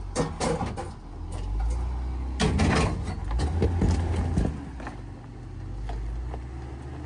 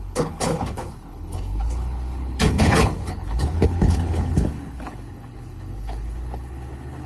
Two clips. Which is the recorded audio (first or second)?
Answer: first